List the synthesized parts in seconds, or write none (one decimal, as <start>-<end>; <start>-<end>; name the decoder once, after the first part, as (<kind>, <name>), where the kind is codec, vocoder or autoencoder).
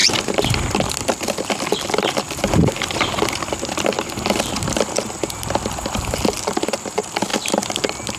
none